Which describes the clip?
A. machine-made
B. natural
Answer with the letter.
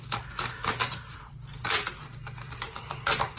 B